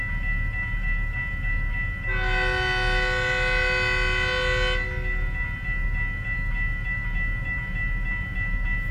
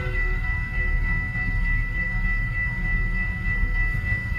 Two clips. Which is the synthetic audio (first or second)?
second